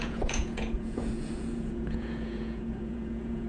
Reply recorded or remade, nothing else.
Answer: remade